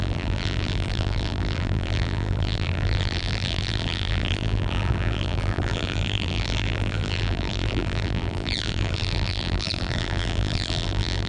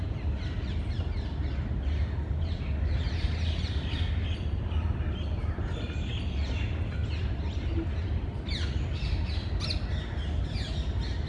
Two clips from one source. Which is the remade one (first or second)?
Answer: first